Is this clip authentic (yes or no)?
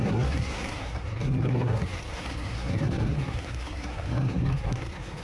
no